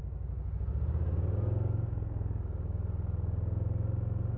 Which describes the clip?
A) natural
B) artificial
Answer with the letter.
A